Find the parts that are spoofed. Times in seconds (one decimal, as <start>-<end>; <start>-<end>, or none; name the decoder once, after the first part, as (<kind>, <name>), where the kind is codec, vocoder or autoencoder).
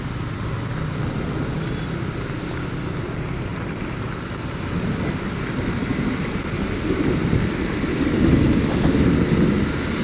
none